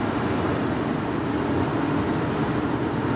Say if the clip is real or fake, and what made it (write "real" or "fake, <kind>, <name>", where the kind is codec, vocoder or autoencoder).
real